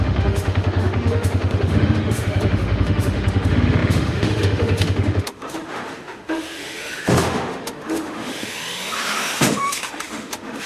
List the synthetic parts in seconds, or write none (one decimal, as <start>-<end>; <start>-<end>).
0.0-10.7